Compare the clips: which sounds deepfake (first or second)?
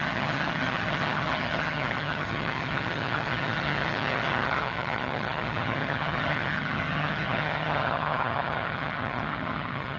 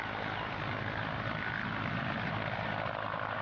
first